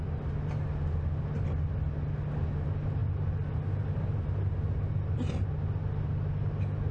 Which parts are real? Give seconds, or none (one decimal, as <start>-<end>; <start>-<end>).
0.0-6.9